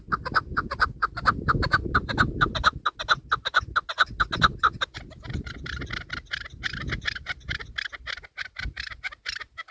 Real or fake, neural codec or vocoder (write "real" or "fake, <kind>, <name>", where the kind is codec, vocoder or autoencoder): real